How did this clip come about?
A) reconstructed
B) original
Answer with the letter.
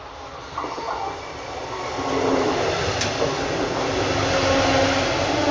B